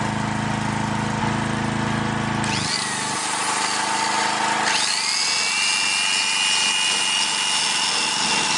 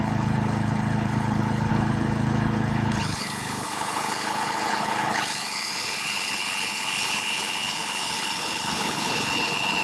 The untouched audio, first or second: first